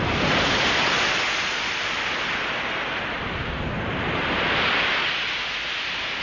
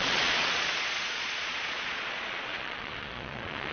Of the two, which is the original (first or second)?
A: first